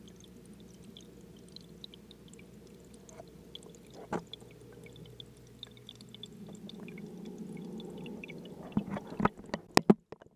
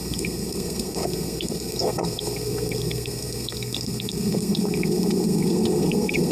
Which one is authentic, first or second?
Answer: first